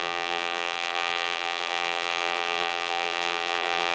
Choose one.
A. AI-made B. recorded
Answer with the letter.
A